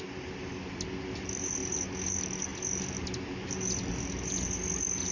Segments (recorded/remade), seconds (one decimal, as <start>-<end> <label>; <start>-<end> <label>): 0.0-5.1 recorded